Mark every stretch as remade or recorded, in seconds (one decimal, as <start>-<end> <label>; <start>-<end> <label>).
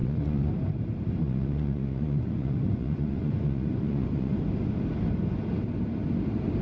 0.0-0.5 remade; 0.5-1.2 recorded; 1.2-4.4 remade; 4.4-6.6 recorded